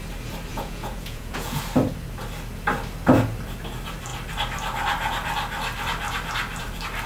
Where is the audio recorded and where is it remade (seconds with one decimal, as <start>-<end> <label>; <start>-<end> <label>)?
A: 0.0-0.5 recorded; 0.5-1.6 remade; 1.6-7.1 recorded